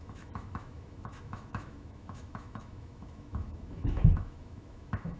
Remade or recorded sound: remade